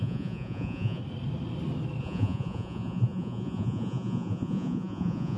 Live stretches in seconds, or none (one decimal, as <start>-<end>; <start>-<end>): 1.0-2.0